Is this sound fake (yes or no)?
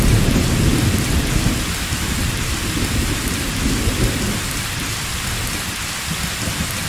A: no